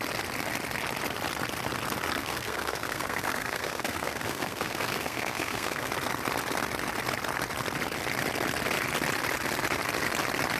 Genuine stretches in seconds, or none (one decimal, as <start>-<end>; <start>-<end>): 0.0-2.2; 5.9-10.6